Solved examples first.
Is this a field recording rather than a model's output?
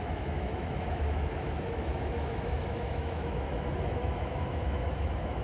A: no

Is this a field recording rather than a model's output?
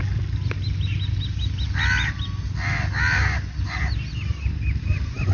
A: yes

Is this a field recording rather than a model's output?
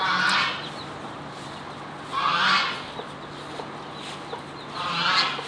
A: yes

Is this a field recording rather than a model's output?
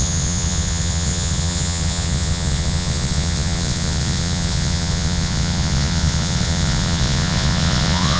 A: no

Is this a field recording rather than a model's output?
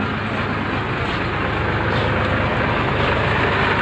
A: yes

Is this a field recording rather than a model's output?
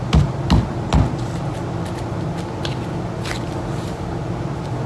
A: yes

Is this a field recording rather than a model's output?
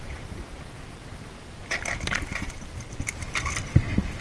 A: no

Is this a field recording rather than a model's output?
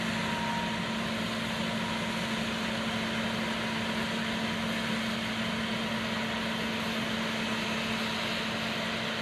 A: yes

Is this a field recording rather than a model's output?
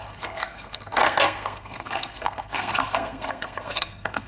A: no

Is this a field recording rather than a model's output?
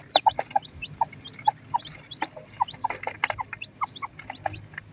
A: yes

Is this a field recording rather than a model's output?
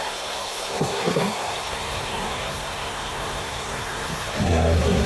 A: no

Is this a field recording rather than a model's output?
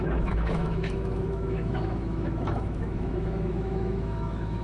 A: no